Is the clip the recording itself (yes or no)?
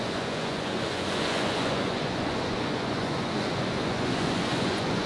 no